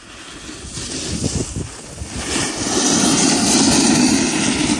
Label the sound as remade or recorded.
recorded